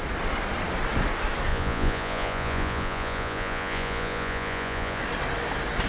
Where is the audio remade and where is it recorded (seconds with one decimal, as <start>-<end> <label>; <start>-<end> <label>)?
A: 0.0-1.5 recorded; 1.5-5.0 remade; 5.0-5.9 recorded